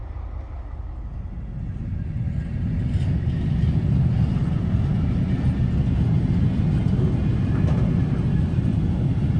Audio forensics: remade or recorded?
recorded